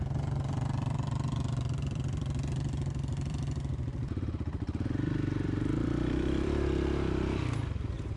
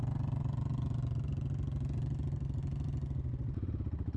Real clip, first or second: second